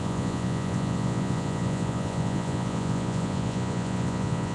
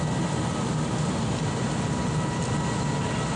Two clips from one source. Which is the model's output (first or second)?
first